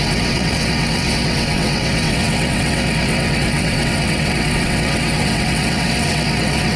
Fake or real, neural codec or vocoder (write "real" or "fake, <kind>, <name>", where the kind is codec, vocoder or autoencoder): fake, vocoder, WaveNeXt